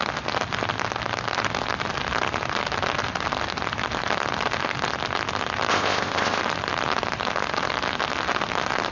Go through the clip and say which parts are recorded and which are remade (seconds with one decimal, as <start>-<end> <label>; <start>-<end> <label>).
0.0-5.7 recorded; 5.7-6.4 remade; 6.4-8.9 recorded